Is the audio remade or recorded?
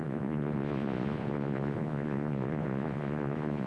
remade